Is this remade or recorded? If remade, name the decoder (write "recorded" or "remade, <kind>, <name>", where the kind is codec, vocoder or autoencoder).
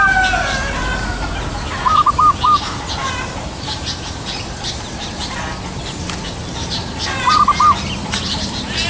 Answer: recorded